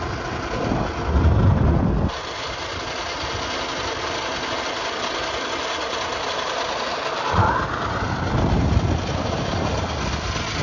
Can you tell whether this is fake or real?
real